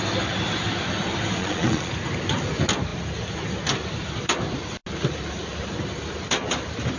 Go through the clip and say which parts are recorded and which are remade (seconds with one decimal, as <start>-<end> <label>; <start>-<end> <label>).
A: 0.0-1.4 recorded; 1.4-1.9 remade; 1.9-7.0 recorded